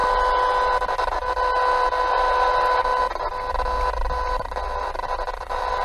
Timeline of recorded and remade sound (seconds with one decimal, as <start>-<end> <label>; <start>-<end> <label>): 0.0-5.8 recorded